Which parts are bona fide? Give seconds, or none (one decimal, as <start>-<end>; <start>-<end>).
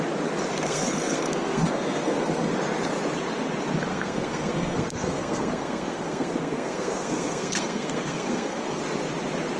0.0-0.5; 2.5-3.9; 8.8-9.6